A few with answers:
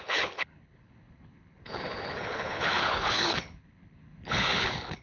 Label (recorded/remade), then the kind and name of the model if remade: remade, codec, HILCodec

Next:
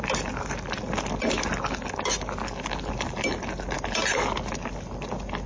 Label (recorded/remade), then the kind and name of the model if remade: recorded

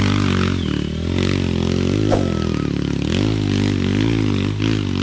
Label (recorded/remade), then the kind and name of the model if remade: recorded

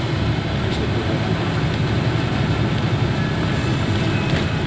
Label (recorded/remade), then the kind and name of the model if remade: recorded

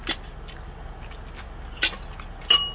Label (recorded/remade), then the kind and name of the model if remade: recorded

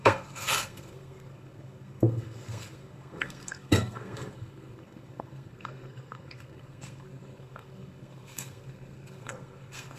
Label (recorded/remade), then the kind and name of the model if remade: remade, codec, SNAC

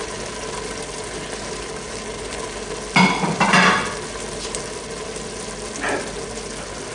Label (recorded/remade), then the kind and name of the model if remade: recorded